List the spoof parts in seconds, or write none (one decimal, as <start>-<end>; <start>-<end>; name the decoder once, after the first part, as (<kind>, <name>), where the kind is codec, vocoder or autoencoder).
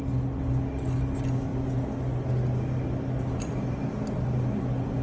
none